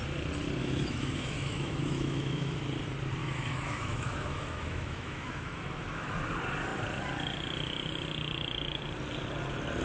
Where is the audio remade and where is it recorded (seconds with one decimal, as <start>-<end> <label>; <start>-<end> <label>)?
0.0-0.6 recorded; 0.6-2.6 remade; 2.6-3.2 recorded; 3.2-6.1 remade; 6.1-9.8 recorded